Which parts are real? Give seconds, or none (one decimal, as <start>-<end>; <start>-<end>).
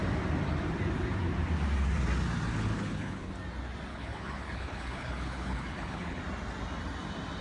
0.0-2.5; 3.3-3.9; 6.2-7.4